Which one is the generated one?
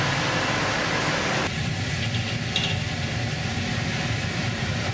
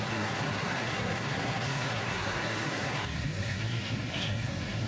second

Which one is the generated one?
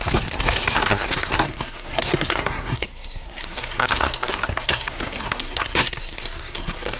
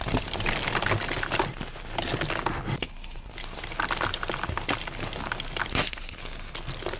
first